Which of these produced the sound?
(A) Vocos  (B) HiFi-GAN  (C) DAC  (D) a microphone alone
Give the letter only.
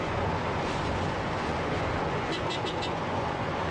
A